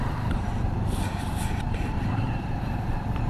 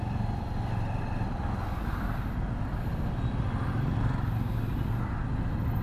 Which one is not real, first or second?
first